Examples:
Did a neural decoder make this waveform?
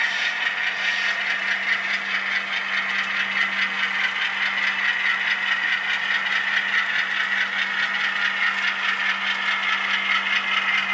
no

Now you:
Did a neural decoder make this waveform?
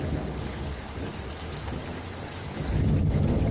no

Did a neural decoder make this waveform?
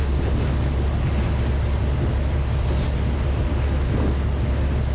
no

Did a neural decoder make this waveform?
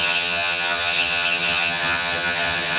yes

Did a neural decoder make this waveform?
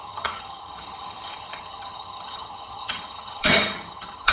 yes